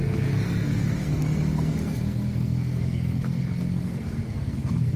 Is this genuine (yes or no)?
no